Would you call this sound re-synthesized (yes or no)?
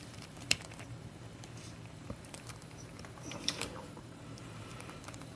yes